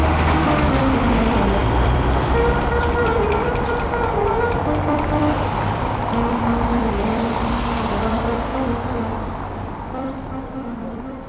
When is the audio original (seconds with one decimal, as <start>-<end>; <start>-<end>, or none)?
8.5-9.6

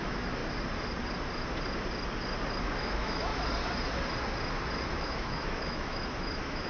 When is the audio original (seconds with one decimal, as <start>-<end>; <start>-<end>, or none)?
0.4-2.6; 3.3-4.9

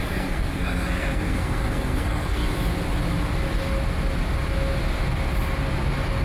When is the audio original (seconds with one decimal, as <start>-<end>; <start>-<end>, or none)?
2.4-6.2

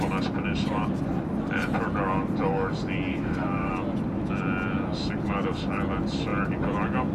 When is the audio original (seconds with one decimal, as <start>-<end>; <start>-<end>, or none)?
0.0-3.1; 3.7-7.1

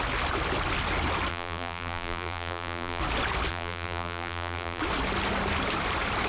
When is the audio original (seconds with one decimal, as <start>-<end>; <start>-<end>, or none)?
0.0-1.3; 3.0-3.5; 4.8-6.3

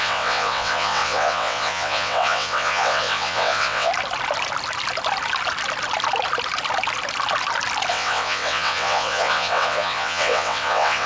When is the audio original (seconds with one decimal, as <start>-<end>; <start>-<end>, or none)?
3.9-7.9

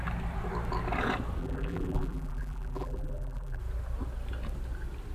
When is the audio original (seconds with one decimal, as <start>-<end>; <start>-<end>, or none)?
0.0-1.4; 3.6-5.1